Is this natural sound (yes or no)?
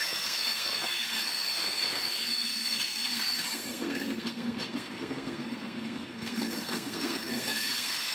no